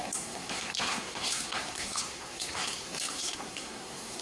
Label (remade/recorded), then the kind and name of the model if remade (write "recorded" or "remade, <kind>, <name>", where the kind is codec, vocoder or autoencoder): remade, codec, SNAC